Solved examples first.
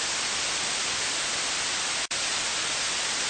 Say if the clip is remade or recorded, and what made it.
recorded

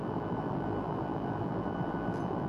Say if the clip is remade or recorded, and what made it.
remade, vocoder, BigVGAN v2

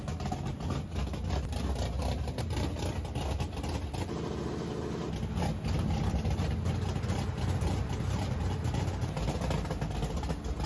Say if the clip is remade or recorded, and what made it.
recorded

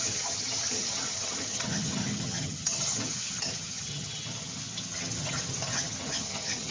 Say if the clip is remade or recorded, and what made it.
remade, vocoder, HiFi-GAN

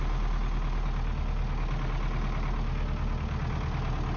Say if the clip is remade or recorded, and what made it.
recorded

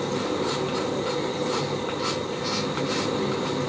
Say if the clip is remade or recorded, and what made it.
recorded